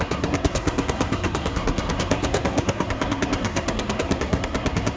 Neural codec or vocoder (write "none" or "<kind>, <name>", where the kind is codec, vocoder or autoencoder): codec, SNAC